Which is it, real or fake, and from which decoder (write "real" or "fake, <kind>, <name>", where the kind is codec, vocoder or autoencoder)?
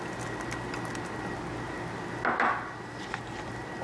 real